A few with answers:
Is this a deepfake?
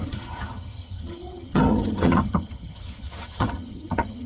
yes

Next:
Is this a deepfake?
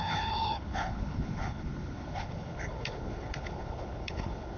yes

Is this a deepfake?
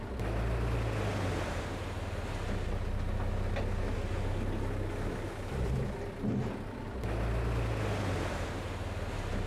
no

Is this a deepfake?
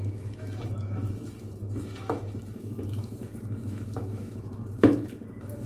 yes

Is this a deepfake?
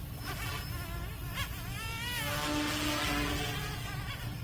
no